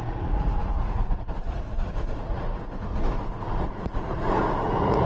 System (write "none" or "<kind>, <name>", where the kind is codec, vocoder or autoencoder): vocoder, Vocos